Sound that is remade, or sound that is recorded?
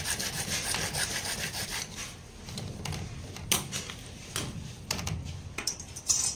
recorded